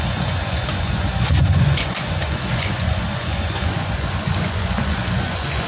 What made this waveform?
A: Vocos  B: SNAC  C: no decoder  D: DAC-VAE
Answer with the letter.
A